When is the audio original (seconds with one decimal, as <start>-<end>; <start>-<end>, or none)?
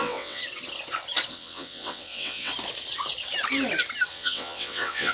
0.4-1.3; 2.5-4.1